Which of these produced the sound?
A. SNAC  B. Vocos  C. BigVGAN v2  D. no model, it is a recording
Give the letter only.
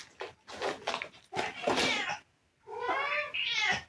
D